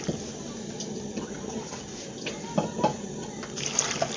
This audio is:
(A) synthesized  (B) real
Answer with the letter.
B